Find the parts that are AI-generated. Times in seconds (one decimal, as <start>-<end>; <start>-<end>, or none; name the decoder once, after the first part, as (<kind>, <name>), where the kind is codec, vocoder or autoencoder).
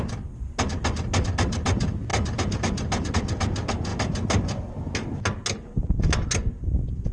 none